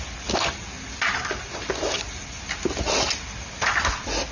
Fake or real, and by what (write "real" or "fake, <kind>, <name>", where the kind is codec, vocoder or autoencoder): real